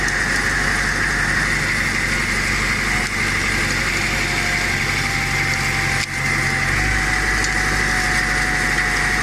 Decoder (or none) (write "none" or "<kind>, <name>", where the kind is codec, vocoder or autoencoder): none